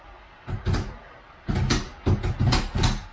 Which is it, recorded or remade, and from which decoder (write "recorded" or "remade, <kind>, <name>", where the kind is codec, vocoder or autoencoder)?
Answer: recorded